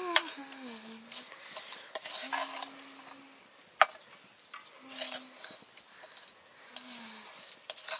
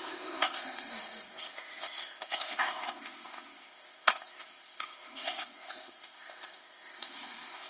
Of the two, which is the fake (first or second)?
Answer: second